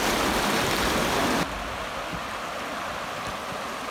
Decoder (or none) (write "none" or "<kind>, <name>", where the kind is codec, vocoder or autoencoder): none